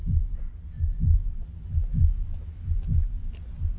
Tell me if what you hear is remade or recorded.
recorded